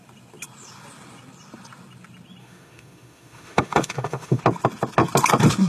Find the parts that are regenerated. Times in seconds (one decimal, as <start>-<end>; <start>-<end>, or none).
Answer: 2.4-4.4